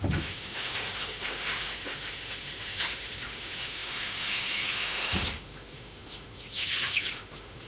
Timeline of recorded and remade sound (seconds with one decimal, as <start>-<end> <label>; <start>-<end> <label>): 0.0-7.7 remade